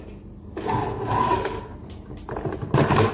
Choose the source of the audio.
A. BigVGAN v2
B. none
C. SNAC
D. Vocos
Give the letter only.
B